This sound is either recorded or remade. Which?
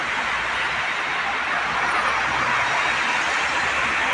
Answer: recorded